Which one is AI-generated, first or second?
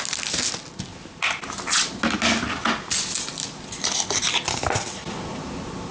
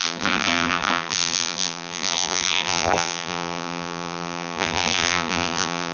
second